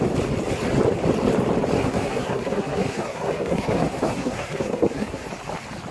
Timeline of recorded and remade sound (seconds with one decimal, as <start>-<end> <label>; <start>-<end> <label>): 0.0-1.8 recorded; 1.8-5.3 remade; 5.3-5.9 recorded